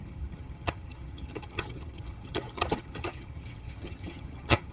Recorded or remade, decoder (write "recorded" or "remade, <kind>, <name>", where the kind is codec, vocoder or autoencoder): remade, vocoder, HiFi-GAN